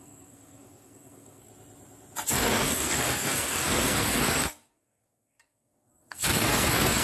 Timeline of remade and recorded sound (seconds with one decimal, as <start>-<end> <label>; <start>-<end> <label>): 0.0-1.5 remade; 1.5-2.3 recorded; 2.3-7.0 remade